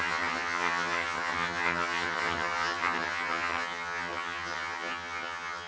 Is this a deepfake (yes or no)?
yes